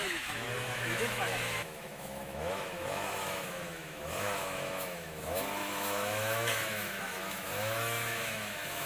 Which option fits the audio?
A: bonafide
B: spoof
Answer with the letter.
B